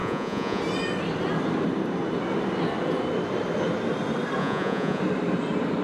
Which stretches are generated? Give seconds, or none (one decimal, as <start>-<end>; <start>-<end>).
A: 0.0-0.6; 4.4-5.0